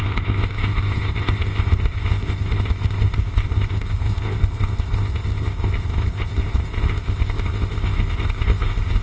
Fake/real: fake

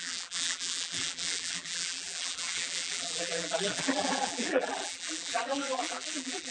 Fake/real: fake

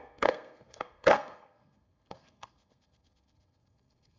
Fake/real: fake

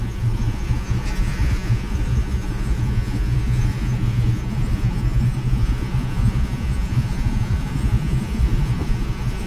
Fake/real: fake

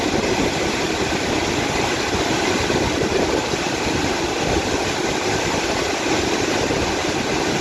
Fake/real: real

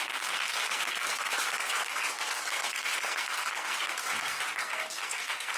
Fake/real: fake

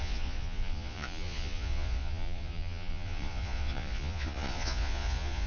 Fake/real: fake